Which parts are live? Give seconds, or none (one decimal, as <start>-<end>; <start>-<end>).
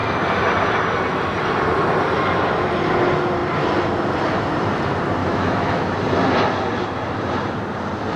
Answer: 0.0-5.2; 5.9-8.2